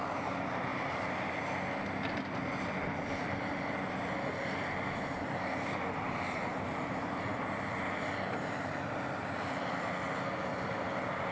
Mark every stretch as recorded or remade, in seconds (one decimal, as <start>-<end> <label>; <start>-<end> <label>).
0.0-11.3 recorded